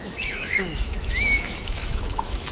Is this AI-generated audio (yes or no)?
yes